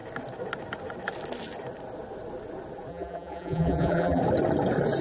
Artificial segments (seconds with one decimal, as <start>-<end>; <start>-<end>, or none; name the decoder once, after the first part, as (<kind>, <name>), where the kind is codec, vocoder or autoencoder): 2.9-4.2 (vocoder, BigVGAN v2)